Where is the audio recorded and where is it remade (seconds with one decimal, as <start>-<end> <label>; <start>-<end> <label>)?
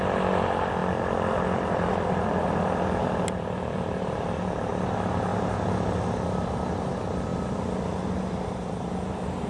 0.0-9.5 recorded